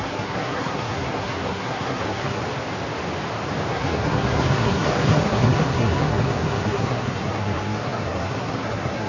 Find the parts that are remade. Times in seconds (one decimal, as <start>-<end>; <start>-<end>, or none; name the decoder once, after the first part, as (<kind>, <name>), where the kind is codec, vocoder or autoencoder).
0.0-2.4 (codec, SNAC); 3.7-9.1

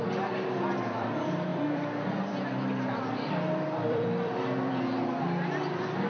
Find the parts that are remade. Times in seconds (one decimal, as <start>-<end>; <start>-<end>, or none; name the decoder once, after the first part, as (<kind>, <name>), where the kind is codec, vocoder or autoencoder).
0.0-6.1 (vocoder, BigVGAN v2)